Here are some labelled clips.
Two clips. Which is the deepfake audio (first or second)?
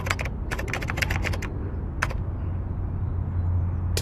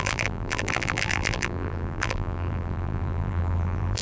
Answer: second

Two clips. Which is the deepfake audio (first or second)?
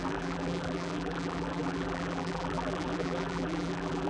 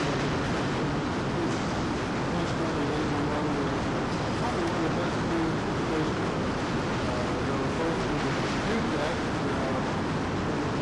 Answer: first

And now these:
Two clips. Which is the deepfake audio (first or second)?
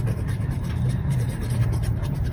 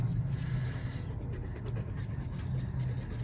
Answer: first